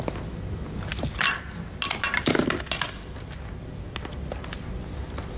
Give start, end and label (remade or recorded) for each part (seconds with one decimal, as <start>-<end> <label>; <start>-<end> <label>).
0.0-5.4 recorded